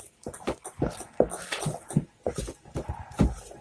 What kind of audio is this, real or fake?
real